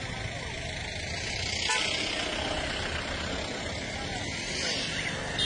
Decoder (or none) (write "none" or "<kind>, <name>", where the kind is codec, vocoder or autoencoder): none